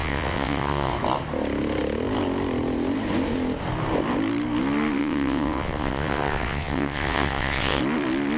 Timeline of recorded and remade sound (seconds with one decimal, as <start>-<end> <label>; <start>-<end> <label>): 0.0-0.9 remade; 0.9-5.0 recorded; 5.0-7.8 remade; 7.8-8.4 recorded